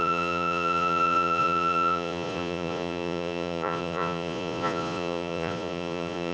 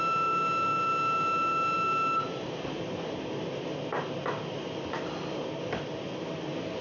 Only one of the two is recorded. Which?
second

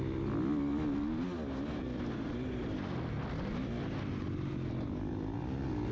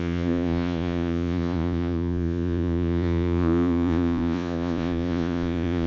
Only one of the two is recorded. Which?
first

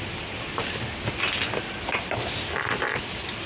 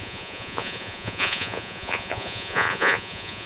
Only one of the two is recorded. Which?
first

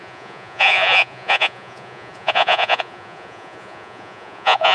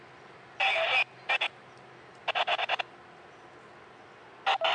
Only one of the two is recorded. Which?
second